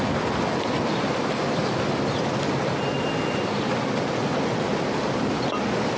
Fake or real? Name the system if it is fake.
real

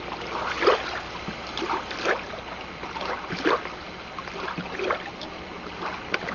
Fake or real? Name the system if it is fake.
real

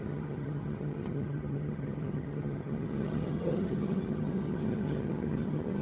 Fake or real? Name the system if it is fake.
fake, vocoder, HiFi-GAN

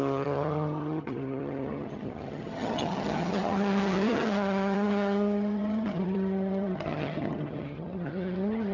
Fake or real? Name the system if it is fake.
fake, vocoder, HiFi-GAN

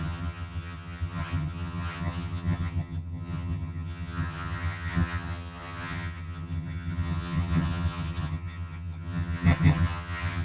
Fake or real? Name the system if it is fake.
fake, vocoder, HiFi-GAN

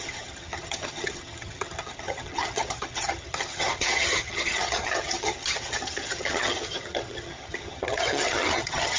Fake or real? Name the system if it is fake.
fake, vocoder, HiFi-GAN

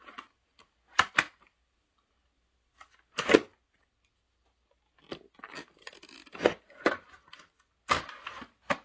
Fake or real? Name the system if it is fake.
real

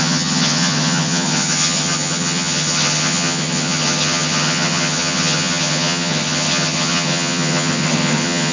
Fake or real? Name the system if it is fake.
fake, vocoder, HiFi-GAN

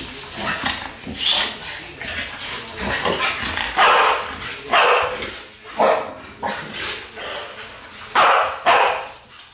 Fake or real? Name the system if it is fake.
real